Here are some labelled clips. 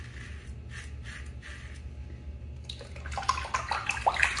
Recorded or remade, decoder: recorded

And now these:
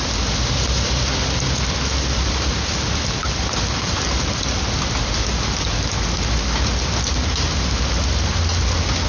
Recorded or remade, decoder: recorded